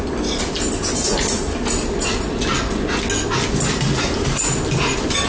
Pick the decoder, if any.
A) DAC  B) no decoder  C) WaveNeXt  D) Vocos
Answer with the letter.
B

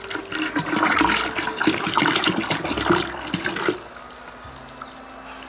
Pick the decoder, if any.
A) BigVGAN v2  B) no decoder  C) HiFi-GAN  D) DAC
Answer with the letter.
B